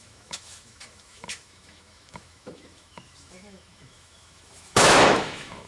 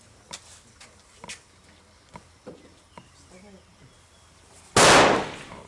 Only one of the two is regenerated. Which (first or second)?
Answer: first